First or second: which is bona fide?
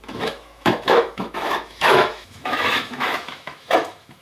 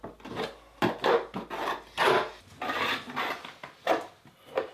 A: second